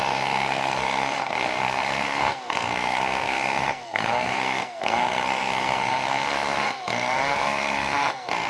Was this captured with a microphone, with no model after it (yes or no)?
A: no